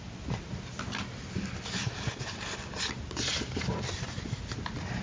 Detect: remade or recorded recorded